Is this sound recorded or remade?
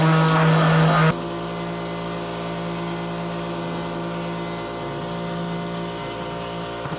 recorded